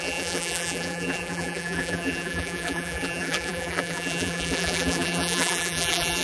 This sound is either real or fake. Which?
fake